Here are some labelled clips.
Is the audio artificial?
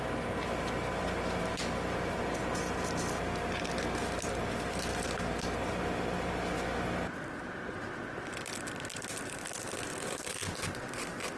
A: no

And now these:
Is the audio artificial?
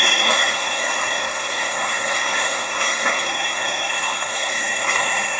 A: yes